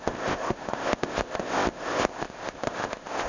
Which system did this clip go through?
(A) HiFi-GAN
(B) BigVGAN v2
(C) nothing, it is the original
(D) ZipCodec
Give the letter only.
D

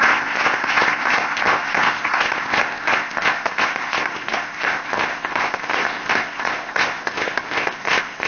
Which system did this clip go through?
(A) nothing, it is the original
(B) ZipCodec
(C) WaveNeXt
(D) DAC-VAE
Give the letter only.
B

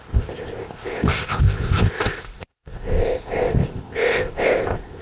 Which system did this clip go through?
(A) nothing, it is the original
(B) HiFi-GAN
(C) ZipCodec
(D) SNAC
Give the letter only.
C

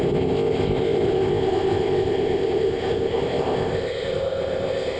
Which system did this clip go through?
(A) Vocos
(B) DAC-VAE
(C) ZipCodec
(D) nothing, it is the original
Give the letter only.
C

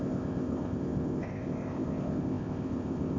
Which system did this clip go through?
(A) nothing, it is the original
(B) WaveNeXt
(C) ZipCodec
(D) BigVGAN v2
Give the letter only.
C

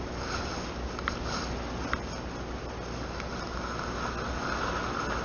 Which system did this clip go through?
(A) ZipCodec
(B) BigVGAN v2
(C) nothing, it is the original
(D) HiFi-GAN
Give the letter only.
C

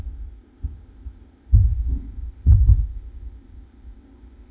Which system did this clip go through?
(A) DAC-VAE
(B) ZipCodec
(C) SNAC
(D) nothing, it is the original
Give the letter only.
B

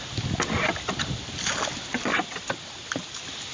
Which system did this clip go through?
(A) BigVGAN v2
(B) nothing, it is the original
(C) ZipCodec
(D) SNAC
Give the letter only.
B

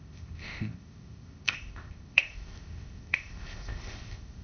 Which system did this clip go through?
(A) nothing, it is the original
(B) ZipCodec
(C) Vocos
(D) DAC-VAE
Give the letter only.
B